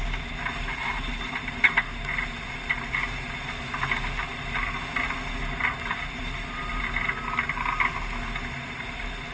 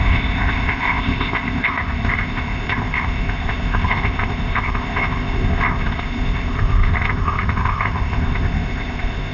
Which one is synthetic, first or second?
second